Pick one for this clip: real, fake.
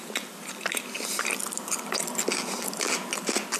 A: real